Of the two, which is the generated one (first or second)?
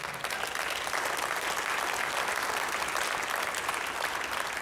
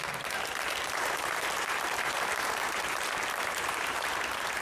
second